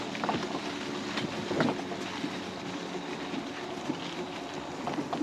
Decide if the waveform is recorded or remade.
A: recorded